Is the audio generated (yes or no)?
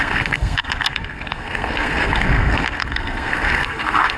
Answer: yes